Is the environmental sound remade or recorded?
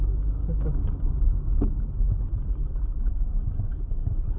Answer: recorded